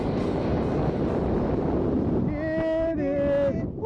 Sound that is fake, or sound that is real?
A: real